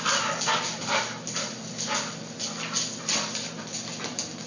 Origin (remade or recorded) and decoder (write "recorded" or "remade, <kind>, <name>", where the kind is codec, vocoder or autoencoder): recorded